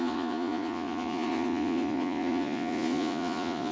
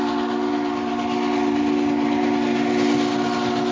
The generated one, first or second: first